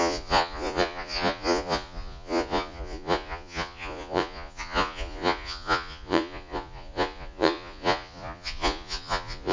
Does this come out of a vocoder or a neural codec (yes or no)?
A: yes